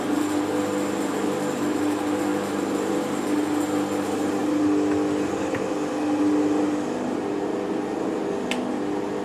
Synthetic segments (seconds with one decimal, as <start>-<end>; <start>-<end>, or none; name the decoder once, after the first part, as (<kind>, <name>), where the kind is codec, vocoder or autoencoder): none

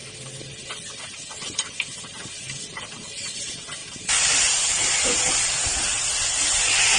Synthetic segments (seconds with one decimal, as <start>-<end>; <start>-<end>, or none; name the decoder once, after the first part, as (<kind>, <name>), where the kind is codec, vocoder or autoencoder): 3.8-5.3 (vocoder, BigVGAN v2)

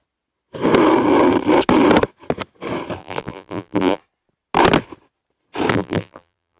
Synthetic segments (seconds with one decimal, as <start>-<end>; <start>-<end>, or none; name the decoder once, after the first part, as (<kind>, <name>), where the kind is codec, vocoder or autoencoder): 3.0-4.0 (vocoder, BigVGAN v2); 5.7-6.6

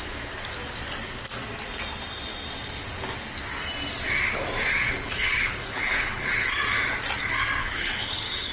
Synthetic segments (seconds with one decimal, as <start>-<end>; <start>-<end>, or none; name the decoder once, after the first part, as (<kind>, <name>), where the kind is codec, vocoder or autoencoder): 4.7-6.5 (codec, HILCodec); 7.6-8.5

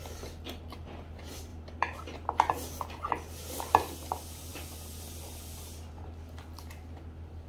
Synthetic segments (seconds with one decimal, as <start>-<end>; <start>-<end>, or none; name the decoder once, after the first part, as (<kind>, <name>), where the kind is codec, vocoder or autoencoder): none